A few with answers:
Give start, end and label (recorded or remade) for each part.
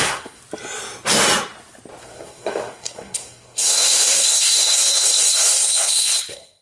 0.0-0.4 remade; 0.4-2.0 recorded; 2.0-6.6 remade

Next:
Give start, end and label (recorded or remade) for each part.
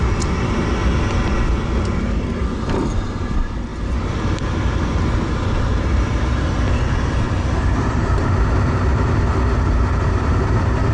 0.0-0.8 remade; 0.8-1.8 recorded; 1.8-10.9 remade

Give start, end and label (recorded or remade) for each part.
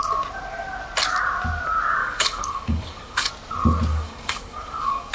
0.0-2.0 recorded; 2.0-3.3 remade; 3.3-3.9 recorded; 3.9-5.1 remade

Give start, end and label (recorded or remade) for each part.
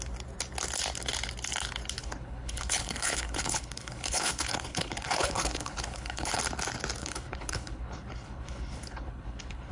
0.0-2.0 recorded; 2.0-6.4 remade; 6.4-7.0 recorded; 7.0-9.7 remade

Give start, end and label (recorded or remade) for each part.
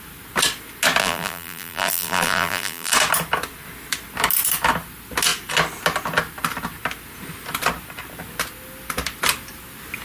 0.0-1.0 recorded; 1.0-2.9 remade; 2.9-10.0 recorded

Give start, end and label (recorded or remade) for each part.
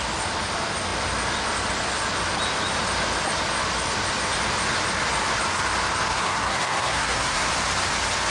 0.0-6.1 recorded; 6.1-7.5 remade; 7.5-8.3 recorded